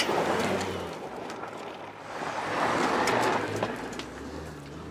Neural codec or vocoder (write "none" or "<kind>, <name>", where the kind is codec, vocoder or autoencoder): none